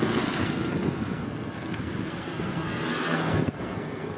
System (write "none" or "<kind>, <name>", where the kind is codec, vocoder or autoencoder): codec, SNAC